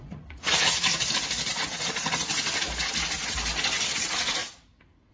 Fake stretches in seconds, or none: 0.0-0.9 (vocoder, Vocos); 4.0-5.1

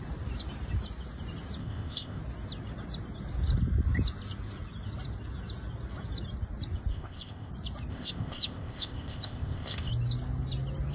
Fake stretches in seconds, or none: 1.6-2.2 (codec, ZipCodec); 6.9-7.5; 7.9-9.9